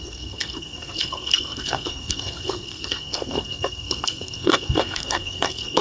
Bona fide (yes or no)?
no